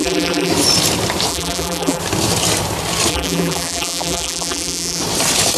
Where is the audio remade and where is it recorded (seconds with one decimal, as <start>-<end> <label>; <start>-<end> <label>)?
0.0-0.5 remade; 0.5-1.3 recorded; 1.3-2.0 remade; 2.0-3.1 recorded; 3.1-5.0 remade; 5.0-5.6 recorded